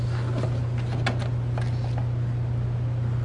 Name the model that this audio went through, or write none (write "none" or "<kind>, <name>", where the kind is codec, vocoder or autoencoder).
none